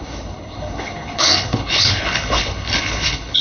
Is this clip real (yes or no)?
no